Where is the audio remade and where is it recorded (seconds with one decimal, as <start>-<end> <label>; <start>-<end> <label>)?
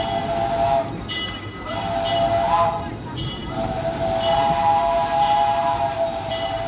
0.0-6.7 recorded